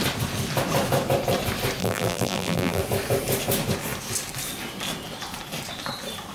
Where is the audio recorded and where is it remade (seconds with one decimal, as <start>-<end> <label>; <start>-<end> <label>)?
0.0-1.8 recorded; 1.8-2.8 remade; 2.8-6.3 recorded